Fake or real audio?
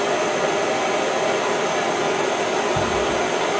real